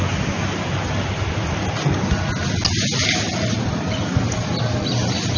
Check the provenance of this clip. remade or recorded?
recorded